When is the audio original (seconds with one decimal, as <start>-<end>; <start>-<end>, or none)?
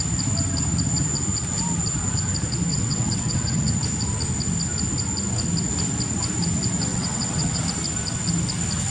0.0-2.7; 3.7-6.9; 7.6-8.9